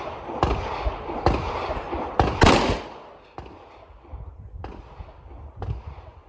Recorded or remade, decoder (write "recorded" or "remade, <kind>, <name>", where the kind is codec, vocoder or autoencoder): recorded